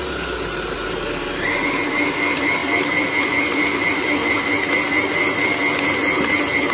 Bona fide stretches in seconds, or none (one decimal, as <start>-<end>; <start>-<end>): 0.0-6.7